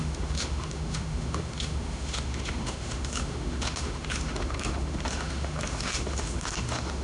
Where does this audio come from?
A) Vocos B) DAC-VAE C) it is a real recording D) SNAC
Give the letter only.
B